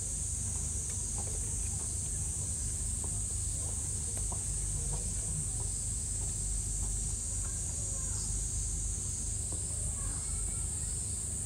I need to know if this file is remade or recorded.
recorded